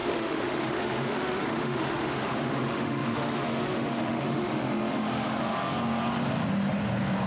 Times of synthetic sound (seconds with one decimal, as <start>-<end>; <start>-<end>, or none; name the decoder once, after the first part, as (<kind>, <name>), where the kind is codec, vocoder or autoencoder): 0.0-5.4 (autoencoder, DAC-VAE)